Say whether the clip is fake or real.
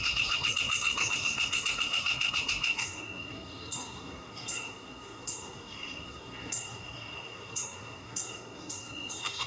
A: fake